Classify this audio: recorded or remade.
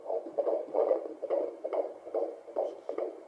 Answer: remade